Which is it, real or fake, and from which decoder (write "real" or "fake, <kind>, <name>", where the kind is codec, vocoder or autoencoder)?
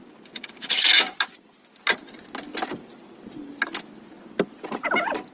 real